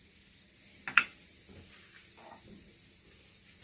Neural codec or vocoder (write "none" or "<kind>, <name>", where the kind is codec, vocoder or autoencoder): none